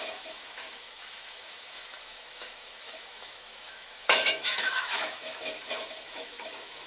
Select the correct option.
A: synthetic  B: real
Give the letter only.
A